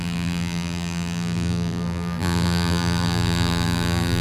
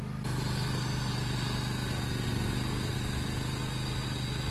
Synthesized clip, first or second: first